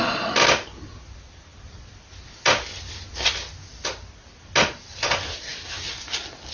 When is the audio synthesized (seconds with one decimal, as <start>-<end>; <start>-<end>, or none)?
none